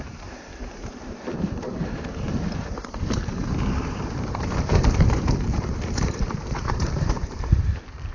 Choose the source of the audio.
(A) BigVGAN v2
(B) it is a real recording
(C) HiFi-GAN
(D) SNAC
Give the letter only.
A